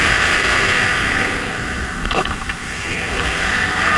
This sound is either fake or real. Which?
fake